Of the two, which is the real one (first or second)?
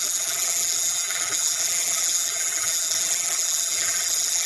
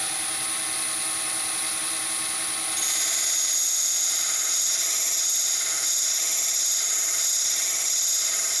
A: second